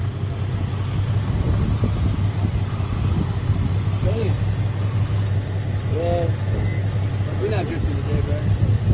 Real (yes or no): yes